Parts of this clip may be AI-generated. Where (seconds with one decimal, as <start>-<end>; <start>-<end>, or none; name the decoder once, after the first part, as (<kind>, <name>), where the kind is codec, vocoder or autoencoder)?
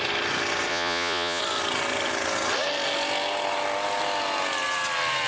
0.7-1.4 (vocoder, Vocos)